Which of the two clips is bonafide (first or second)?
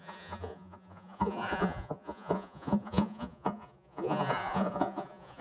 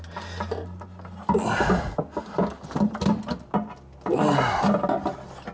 second